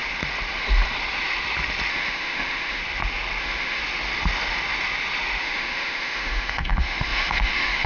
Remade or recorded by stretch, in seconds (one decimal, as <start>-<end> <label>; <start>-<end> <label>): 0.0-1.9 recorded; 1.9-2.8 remade; 2.8-3.4 recorded; 3.4-3.8 remade; 3.8-5.4 recorded; 5.4-7.9 remade

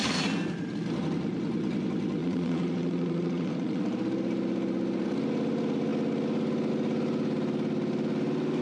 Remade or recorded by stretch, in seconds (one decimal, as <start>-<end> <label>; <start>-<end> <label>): 0.0-2.2 recorded; 2.2-3.8 remade; 3.8-8.6 recorded